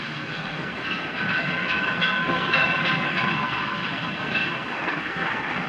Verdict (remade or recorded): remade